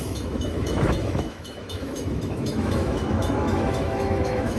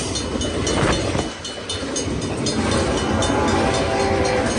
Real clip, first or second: second